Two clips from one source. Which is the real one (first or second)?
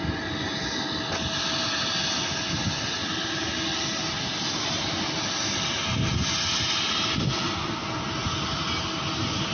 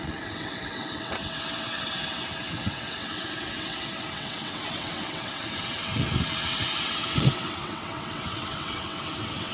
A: first